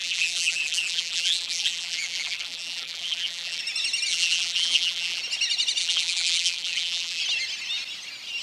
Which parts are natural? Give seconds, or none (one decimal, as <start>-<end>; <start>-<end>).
3.6-4.1; 5.2-5.8; 7.2-8.4